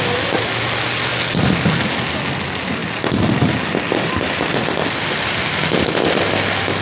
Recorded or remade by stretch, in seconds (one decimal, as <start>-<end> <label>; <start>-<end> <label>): 0.0-6.8 recorded